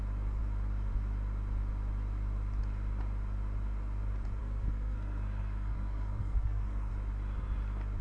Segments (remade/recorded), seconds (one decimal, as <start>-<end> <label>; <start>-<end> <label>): 0.0-4.4 recorded; 4.4-6.9 remade; 6.9-8.0 recorded